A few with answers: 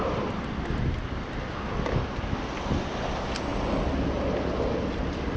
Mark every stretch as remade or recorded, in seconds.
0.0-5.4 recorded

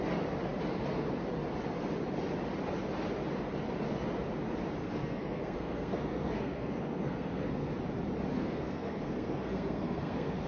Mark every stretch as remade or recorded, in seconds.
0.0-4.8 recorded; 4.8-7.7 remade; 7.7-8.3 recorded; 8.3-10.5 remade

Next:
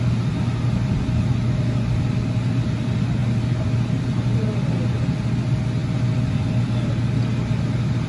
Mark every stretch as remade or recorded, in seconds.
0.0-8.1 recorded

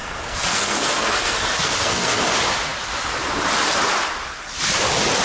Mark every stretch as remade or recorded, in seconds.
0.0-2.2 remade; 2.2-5.2 recorded

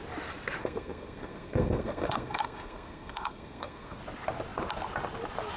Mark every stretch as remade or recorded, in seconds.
0.0-0.6 recorded; 0.6-4.0 remade; 4.0-5.6 recorded